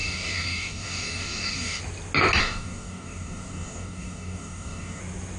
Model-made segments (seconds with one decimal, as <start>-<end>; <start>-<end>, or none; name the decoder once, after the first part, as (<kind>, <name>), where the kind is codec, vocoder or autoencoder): 0.0-1.8 (codec, DAC); 2.4-5.0

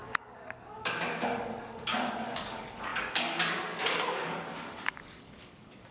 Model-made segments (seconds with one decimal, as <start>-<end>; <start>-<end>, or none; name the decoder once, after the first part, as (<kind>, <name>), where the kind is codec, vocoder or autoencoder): 0.0-5.9 (codec, DAC)

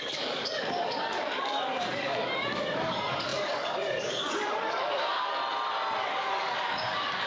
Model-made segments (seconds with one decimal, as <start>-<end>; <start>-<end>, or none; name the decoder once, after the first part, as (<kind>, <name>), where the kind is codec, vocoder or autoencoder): 0.0-5.4 (codec, DAC); 6.0-7.3

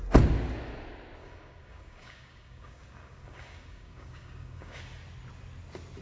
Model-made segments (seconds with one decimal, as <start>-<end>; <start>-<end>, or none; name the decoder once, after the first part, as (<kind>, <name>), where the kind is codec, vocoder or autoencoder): 1.2-4.8 (codec, DAC)

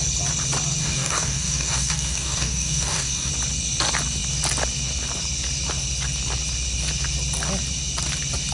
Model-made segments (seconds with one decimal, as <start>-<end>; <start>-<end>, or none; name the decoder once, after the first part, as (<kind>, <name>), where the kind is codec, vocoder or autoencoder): 0.8-3.3 (codec, DAC)

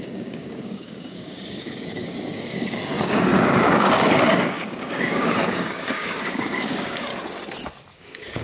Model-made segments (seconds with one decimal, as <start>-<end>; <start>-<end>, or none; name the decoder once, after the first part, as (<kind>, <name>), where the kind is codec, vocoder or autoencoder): 0.0-7.1 (codec, DAC); 7.9-8.4

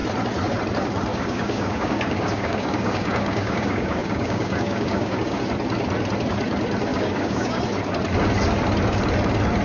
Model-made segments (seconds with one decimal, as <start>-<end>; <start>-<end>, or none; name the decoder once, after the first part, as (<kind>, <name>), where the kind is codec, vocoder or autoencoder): 1.1-5.4 (codec, DAC); 6.9-7.6